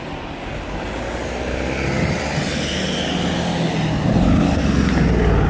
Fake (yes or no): no